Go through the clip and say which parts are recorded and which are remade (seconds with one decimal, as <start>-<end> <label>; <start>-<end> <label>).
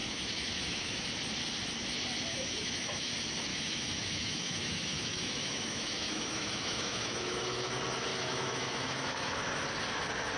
0.0-1.1 remade; 1.1-2.3 recorded; 2.3-3.1 remade; 3.1-3.5 recorded; 3.5-7.7 remade; 7.7-8.1 recorded; 8.1-9.4 remade; 9.4-10.4 recorded